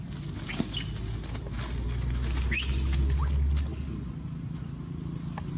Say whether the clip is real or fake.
real